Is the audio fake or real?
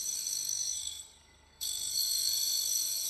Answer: fake